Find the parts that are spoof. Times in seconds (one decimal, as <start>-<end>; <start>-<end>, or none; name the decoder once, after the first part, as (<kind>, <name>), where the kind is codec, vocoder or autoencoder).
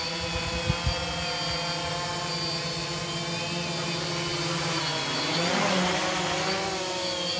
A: 4.3-4.8 (vocoder, BigVGAN v2)